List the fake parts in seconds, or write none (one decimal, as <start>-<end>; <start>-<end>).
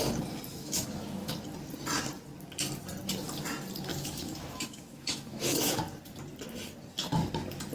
0.5-1.3; 3.9-5.8